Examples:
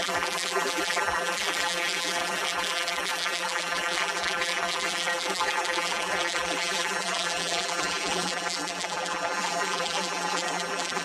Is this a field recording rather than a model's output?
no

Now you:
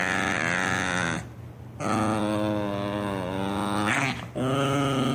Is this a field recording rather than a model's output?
yes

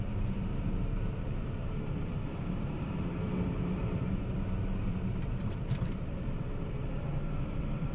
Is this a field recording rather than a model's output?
no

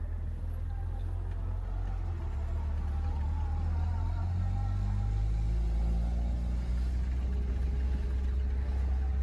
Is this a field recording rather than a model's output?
yes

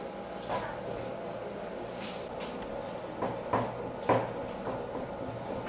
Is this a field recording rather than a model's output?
yes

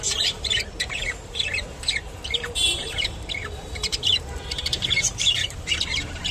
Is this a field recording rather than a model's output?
no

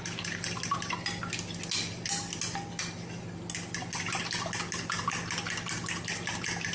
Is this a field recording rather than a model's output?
yes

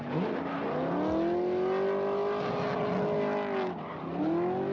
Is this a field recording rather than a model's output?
yes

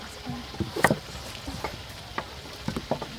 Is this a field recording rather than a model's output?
no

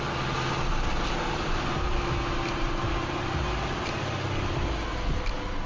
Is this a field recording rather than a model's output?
yes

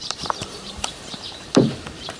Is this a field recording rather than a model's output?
no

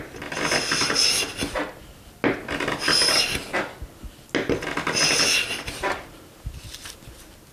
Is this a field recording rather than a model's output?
yes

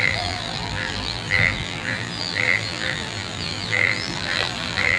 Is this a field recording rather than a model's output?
no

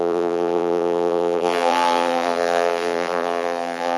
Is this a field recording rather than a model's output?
no